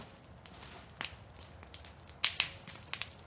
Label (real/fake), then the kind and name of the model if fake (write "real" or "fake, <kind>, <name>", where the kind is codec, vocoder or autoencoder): real